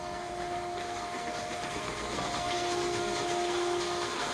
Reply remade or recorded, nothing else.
remade